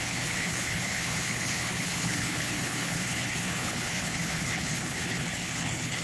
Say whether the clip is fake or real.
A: fake